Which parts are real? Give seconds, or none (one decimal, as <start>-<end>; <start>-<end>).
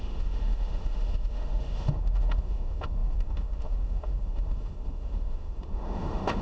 none